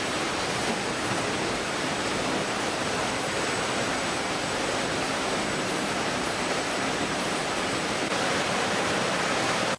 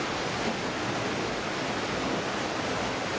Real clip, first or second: second